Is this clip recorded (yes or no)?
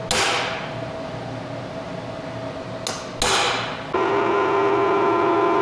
yes